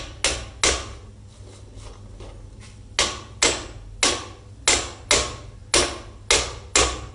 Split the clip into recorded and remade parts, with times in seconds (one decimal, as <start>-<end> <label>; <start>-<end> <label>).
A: 0.0-7.1 recorded